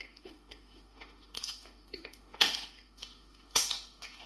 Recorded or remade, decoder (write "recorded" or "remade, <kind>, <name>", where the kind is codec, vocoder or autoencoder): remade, autoencoder, DAC-VAE